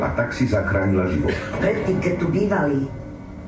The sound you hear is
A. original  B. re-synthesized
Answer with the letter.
A